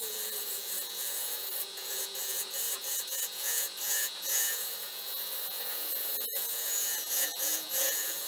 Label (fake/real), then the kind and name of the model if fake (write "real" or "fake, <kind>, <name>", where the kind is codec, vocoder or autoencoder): fake, vocoder, Vocos